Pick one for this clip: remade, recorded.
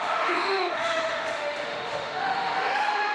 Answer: remade